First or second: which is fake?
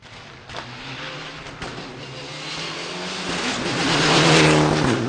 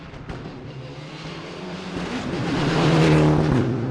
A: second